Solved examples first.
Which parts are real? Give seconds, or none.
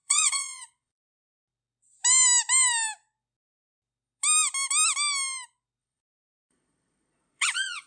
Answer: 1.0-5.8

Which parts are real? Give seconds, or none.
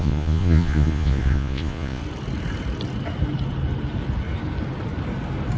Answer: 2.0-5.6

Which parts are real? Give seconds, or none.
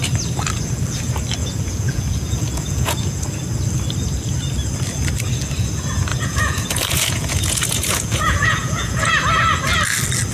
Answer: 0.0-1.4; 3.2-6.1; 9.1-10.3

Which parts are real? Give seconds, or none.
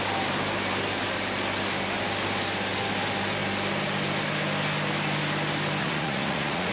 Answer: 0.0-5.8